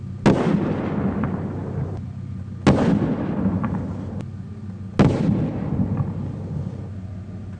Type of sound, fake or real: real